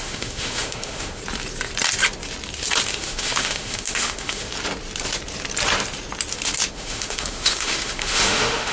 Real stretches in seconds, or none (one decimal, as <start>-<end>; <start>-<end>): 1.2-2.9; 4.5-6.7